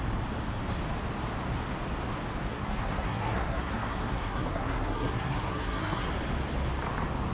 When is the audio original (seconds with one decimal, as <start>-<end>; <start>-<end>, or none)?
0.0-2.5; 6.1-7.3